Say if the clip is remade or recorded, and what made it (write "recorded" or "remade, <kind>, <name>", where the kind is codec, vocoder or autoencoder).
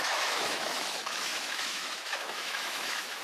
remade, autoencoder, DAC-VAE